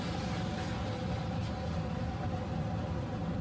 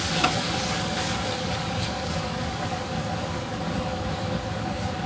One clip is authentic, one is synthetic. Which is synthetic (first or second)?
second